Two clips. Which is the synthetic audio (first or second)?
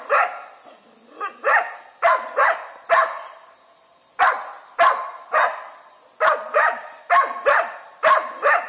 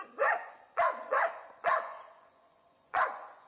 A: second